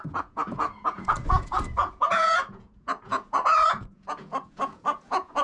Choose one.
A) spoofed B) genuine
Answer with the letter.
A